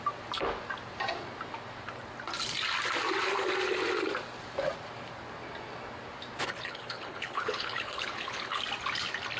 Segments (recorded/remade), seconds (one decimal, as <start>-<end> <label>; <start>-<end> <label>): 0.0-6.4 recorded; 6.4-8.6 remade; 8.6-9.4 recorded